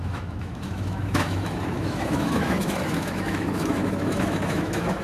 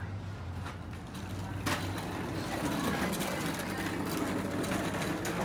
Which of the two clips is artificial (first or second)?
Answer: first